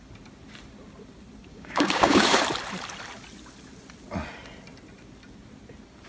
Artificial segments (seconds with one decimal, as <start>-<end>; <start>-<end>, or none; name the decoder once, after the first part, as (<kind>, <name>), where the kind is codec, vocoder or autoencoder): 1.5-2.4 (codec, DAC)